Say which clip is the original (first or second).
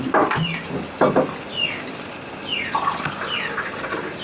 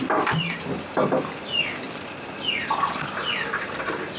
first